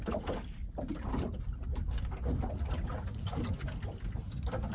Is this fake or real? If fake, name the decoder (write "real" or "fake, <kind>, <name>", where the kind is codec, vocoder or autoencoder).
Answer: real